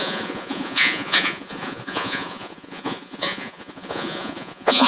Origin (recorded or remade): remade